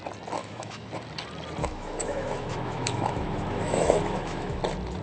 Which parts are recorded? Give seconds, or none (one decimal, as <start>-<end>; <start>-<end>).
0.0-0.4; 0.9-1.6; 4.6-5.0